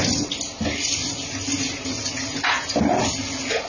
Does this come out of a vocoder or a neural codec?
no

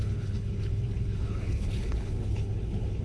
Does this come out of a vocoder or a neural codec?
yes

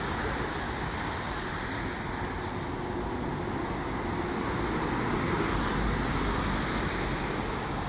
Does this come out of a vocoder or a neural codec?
no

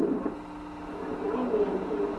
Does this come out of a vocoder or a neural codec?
no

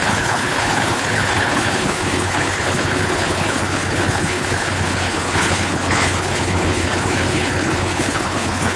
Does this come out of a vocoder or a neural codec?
yes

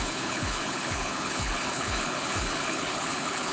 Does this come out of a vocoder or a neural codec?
yes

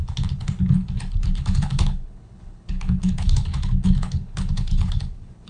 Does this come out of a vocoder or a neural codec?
yes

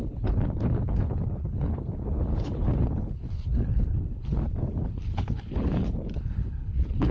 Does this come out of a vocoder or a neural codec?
yes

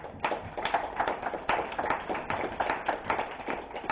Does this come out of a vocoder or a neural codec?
no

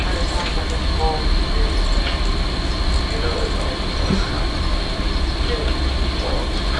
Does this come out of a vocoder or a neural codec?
no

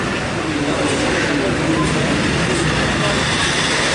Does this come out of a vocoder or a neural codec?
no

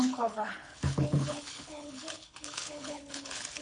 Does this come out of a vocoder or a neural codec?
yes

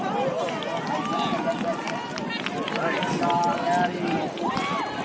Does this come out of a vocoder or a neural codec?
no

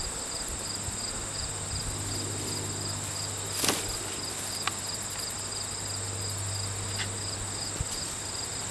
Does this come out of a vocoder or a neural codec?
no